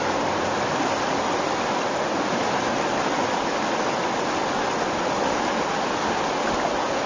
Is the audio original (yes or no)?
yes